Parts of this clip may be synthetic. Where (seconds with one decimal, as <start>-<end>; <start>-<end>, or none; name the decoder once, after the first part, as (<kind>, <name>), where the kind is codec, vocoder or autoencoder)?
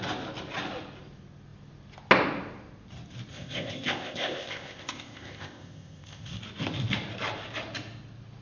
3.3-6.4 (codec, ZipCodec)